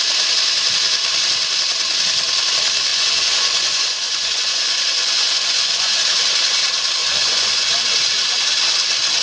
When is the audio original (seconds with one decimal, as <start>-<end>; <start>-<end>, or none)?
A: 0.0-2.9; 6.0-7.0; 7.7-9.2